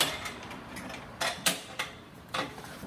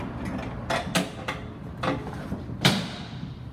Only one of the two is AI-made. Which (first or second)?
first